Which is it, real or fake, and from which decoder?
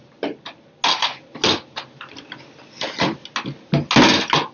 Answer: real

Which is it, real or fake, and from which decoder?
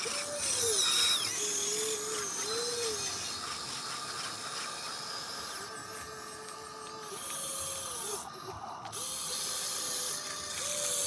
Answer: real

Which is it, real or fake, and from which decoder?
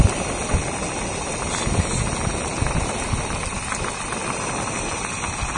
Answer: real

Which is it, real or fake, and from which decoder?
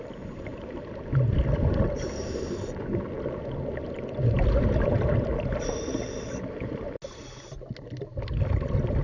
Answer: real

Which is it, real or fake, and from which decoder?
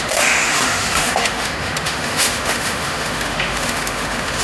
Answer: fake, autoencoder, DAC-VAE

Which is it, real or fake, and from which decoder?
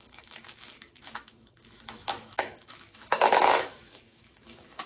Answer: fake, autoencoder, DAC-VAE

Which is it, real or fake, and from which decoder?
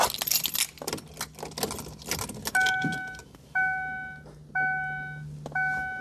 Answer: real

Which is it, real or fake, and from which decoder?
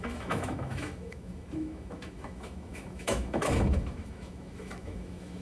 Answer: fake, autoencoder, DAC-VAE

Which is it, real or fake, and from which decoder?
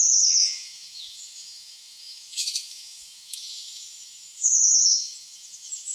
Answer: fake, autoencoder, DAC-VAE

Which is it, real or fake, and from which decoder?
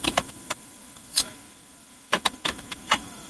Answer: fake, autoencoder, DAC-VAE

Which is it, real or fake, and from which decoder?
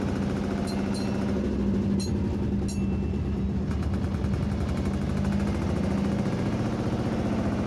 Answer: real